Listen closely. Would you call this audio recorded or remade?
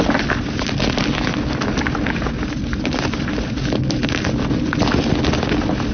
recorded